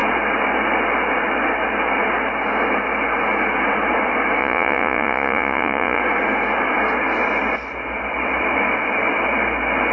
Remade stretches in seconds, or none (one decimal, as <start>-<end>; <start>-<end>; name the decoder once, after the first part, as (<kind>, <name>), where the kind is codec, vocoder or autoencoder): 4.4-6.0 (vocoder, Vocos)